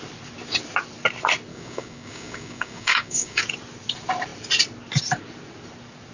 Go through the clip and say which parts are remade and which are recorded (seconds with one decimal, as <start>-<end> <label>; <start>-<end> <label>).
0.0-1.5 recorded; 1.5-3.4 remade; 3.4-6.1 recorded

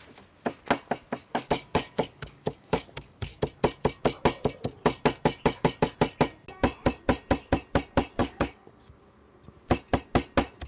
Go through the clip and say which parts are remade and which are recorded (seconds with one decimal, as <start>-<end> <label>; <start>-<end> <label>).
0.0-1.2 recorded; 1.2-3.4 remade; 3.4-8.2 recorded; 8.2-9.0 remade; 9.0-10.7 recorded

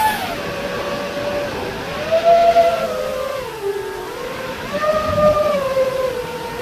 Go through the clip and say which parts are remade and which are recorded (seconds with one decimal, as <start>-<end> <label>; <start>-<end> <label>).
0.0-6.6 recorded

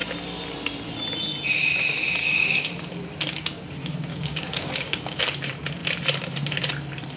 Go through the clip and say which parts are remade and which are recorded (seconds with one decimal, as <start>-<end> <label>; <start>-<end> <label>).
0.0-2.2 recorded; 2.2-2.7 remade; 2.7-4.1 recorded; 4.1-5.2 remade; 5.2-7.2 recorded

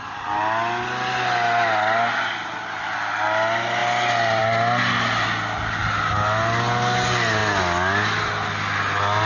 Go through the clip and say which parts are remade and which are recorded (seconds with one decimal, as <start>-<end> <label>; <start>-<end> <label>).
0.0-9.3 recorded

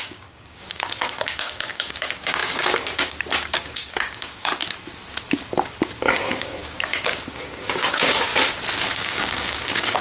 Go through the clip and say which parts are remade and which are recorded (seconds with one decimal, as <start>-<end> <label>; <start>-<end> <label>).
0.0-4.6 remade; 4.6-6.1 recorded; 6.1-8.3 remade; 8.3-8.9 recorded; 8.9-10.0 remade

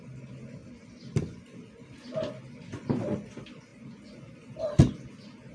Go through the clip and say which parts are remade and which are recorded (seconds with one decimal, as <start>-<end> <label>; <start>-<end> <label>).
0.0-5.5 recorded